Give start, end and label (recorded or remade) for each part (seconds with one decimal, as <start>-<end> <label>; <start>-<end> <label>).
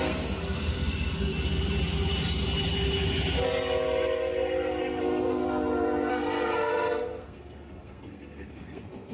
0.0-1.3 remade; 1.3-4.8 recorded; 4.8-5.4 remade; 5.4-6.1 recorded; 6.1-9.1 remade